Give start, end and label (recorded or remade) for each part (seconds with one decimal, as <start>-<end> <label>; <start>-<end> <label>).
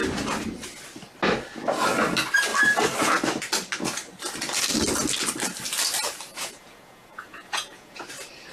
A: 0.0-6.3 recorded; 6.3-8.0 remade; 8.0-8.5 recorded